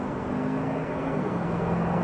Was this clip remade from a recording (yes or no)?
yes